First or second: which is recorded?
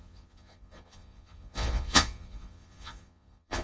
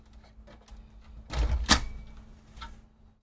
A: second